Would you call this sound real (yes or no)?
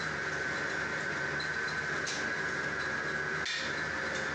yes